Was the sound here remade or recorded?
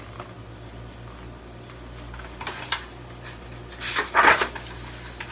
recorded